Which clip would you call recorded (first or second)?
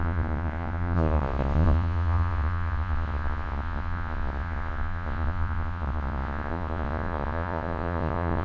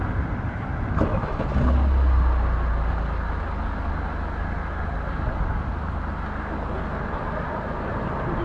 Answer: second